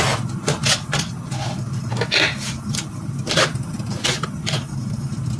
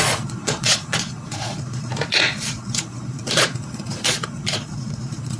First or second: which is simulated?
second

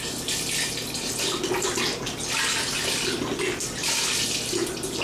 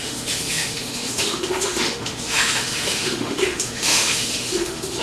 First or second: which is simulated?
second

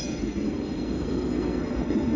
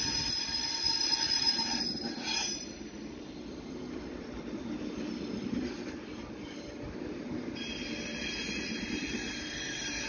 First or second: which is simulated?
first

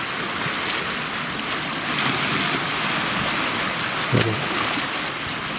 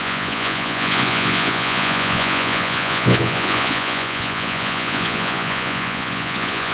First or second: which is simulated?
second